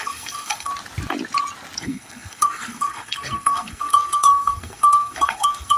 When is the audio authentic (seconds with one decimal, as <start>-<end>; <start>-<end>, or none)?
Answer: 0.7-1.8